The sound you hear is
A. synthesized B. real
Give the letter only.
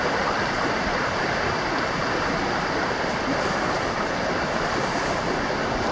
B